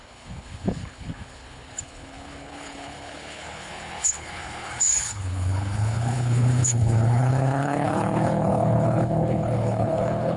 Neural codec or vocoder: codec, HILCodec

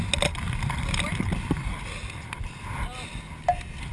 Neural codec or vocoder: none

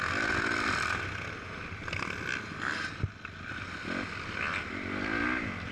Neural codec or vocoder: none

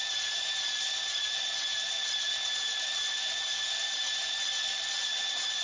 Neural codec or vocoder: vocoder, BigVGAN v2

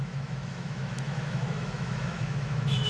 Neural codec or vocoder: autoencoder, DAC-VAE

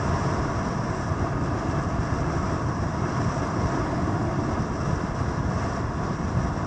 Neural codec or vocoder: none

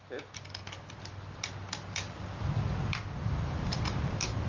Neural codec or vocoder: none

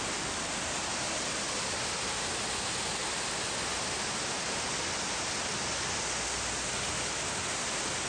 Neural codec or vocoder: none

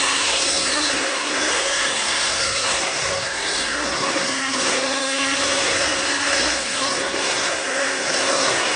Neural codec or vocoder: codec, SNAC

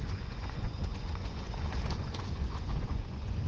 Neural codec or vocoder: vocoder, Vocos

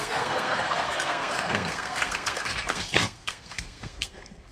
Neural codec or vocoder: codec, SNAC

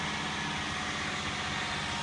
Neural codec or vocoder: none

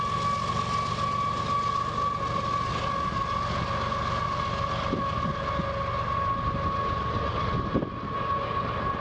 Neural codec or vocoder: none